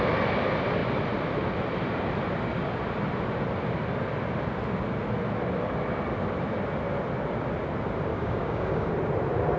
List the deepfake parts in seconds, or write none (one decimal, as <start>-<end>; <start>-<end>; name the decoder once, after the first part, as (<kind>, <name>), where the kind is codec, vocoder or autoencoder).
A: 8.1-8.9 (codec, DAC)